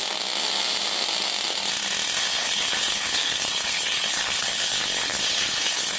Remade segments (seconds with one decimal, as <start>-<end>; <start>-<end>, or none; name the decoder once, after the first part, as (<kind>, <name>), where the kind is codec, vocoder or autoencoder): 2.2-6.0 (codec, HILCodec)